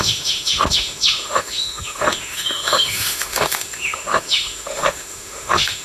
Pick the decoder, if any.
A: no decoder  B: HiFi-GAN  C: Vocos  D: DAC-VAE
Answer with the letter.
D